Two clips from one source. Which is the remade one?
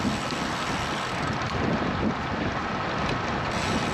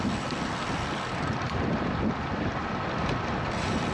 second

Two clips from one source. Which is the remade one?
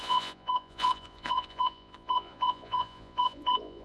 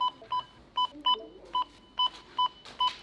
first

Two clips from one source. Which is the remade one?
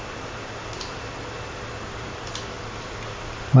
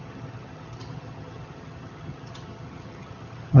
second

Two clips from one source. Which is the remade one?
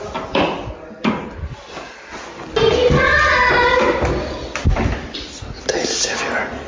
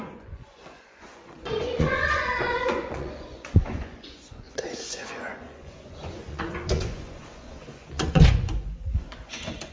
second